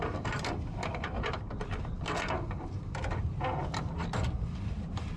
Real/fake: fake